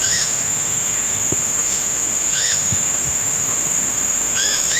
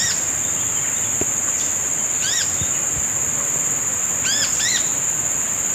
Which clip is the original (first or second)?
second